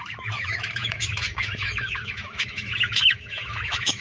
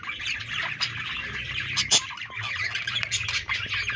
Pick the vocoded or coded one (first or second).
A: first